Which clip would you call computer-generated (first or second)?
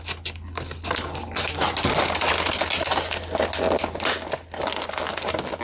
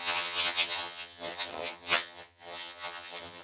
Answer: second